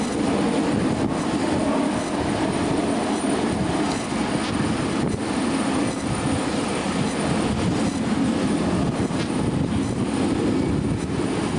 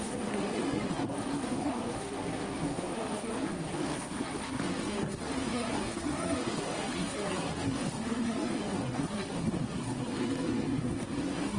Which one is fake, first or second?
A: second